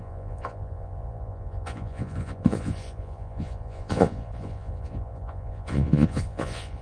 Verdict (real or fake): fake